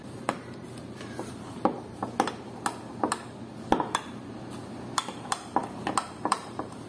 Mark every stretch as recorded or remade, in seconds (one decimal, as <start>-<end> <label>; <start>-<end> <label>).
0.0-2.0 remade; 2.0-6.1 recorded; 6.1-6.9 remade